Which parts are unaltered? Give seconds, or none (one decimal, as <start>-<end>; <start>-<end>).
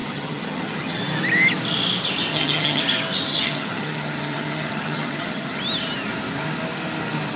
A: 1.0-2.3; 2.8-3.3; 5.6-7.4